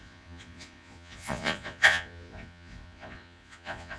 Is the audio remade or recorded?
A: remade